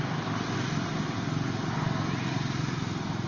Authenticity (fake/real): real